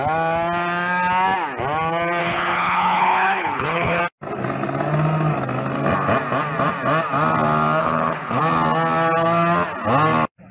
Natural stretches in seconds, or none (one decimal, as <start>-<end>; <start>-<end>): 0.0-2.2; 4.0-7.8; 8.4-10.5